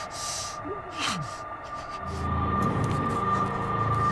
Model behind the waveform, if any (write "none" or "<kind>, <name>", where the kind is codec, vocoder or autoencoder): none